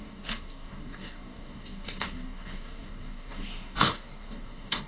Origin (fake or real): fake